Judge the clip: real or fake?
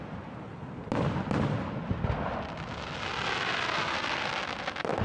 real